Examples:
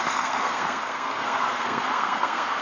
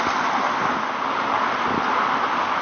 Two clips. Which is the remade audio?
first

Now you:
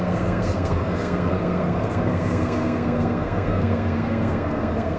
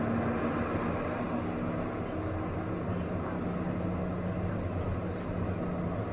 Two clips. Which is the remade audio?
first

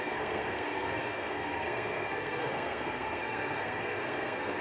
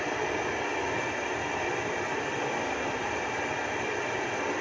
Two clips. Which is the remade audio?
first